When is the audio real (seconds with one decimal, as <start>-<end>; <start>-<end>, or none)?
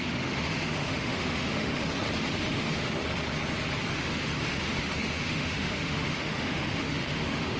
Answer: 1.9-2.4; 3.0-3.9